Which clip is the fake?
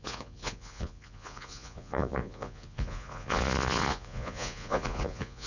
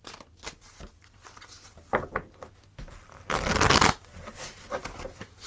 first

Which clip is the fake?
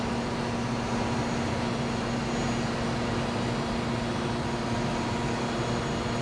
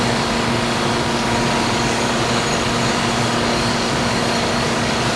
second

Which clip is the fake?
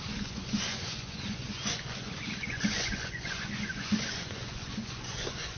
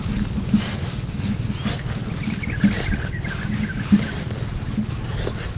first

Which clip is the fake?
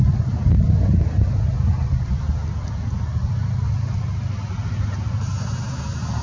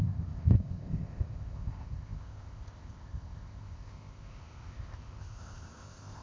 second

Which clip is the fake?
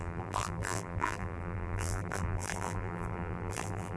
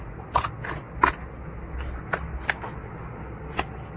first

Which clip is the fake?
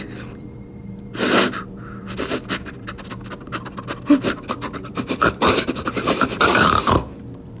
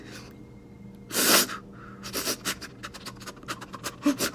first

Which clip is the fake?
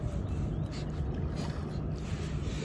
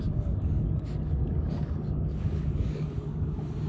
second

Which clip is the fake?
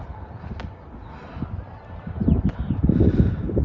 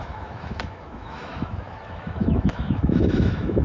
second